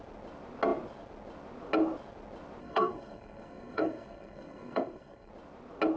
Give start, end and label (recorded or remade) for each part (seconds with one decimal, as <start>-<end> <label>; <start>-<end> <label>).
0.0-2.6 recorded; 2.6-5.3 remade; 5.3-6.0 recorded